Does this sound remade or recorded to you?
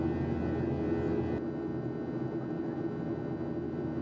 recorded